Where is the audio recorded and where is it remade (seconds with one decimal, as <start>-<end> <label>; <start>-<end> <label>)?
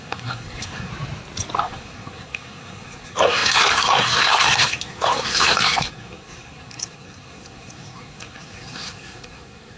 0.0-0.9 remade; 0.9-1.6 recorded; 1.6-9.8 remade